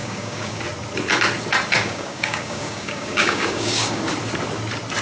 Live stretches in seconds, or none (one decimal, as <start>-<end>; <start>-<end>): 0.6-1.8; 4.0-5.0